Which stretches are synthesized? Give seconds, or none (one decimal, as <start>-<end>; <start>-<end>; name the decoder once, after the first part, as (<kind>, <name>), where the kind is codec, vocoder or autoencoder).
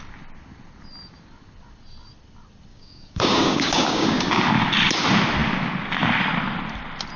2.7-4.4 (codec, DAC)